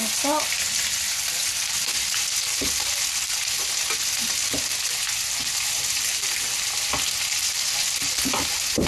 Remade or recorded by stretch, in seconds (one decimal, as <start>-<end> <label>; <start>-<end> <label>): 0.0-8.9 recorded